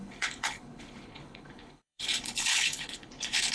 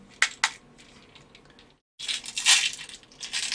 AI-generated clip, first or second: first